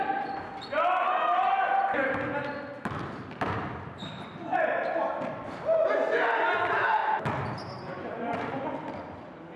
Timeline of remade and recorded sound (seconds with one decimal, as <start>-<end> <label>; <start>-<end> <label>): 0.0-9.6 recorded